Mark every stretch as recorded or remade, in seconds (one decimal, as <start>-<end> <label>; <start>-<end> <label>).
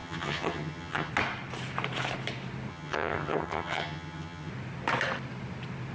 0.0-1.1 remade; 1.1-2.7 recorded; 2.7-4.5 remade; 4.5-5.9 recorded